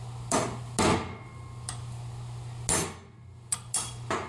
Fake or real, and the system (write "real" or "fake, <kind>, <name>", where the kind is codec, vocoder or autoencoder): real